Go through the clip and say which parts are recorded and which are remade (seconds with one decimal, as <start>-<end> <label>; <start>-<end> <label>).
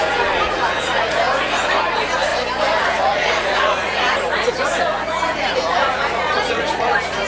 0.0-2.3 remade; 2.3-2.8 recorded; 2.8-7.3 remade